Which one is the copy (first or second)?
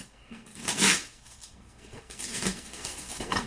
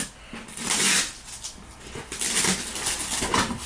first